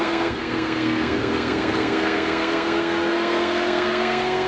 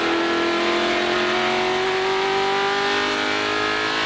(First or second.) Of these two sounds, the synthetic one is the first